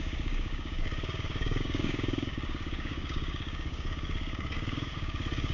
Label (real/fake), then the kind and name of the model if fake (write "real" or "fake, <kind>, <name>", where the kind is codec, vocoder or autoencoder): fake, codec, DAC